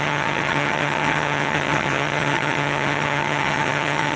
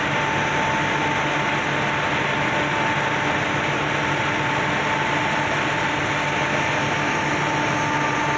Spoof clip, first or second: first